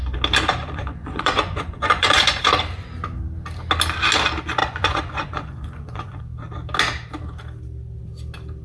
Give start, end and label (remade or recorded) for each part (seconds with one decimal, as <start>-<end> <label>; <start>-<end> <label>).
0.0-0.6 recorded; 0.6-2.4 remade; 2.4-4.6 recorded; 4.6-6.2 remade; 6.2-8.6 recorded